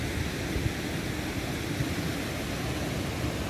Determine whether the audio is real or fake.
real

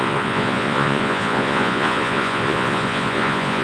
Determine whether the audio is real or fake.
fake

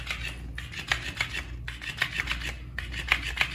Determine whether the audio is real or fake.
real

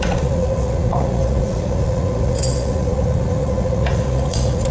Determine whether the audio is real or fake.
fake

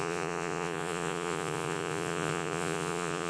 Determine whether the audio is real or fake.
fake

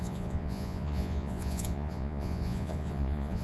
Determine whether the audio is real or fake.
fake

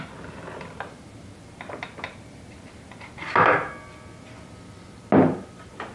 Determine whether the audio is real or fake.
real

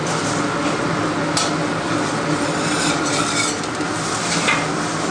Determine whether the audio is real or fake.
real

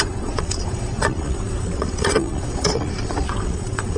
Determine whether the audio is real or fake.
fake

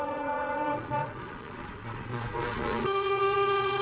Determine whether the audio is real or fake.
fake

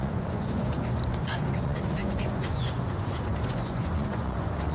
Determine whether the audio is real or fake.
fake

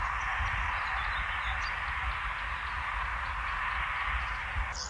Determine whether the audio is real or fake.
real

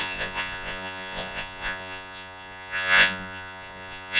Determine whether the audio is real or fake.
fake